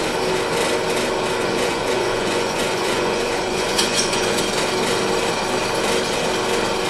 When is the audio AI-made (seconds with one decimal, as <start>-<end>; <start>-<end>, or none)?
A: 1.4-4.4